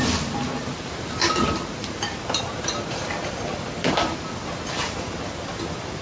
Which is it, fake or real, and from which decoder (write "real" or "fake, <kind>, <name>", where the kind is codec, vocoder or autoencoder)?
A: fake, vocoder, BigVGAN v2